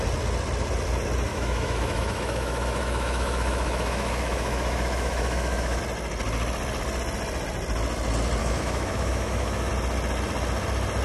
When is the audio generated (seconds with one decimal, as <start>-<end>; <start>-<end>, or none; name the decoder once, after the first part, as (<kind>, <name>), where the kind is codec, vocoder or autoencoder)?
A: 1.3-5.8 (autoencoder, DAC-VAE); 8.4-9.7